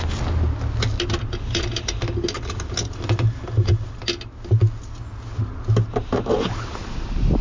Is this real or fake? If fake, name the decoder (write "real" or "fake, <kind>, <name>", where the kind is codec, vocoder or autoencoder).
real